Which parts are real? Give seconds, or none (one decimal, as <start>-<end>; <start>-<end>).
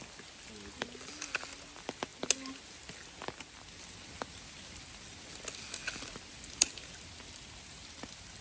0.0-8.4